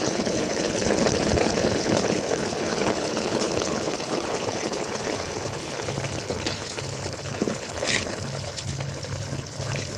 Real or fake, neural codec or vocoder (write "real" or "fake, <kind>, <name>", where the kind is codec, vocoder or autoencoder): fake, codec, HILCodec